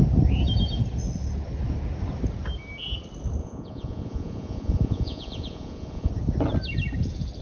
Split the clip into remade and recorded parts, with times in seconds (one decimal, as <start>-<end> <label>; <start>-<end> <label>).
0.0-3.4 recorded; 3.4-6.1 remade; 6.1-7.4 recorded